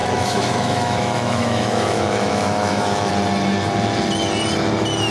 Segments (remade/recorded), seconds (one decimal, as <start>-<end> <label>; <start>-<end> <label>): 0.0-3.1 remade; 3.1-5.1 recorded